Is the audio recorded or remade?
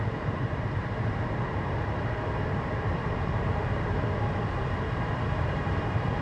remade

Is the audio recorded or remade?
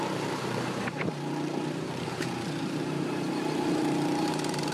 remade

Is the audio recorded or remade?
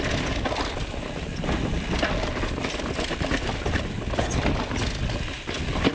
recorded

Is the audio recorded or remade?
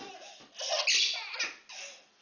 recorded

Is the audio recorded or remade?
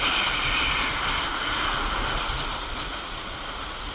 recorded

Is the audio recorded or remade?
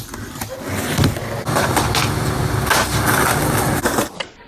recorded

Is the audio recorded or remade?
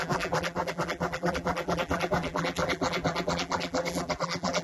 remade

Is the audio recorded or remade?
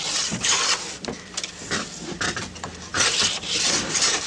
remade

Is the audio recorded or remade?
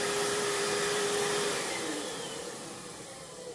remade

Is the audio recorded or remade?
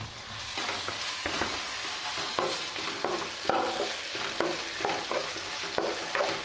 recorded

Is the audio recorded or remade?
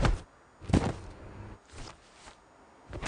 recorded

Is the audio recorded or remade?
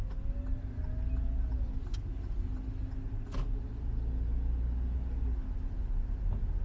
recorded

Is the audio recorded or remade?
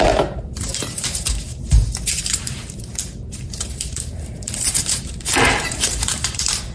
remade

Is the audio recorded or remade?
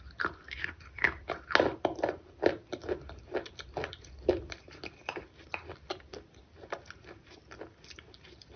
recorded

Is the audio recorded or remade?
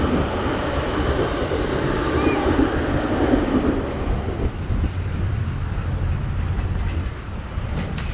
recorded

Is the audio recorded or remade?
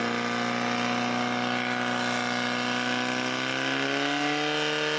recorded